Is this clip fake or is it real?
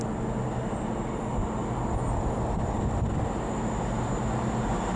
real